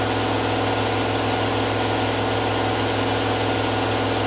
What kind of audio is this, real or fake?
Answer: real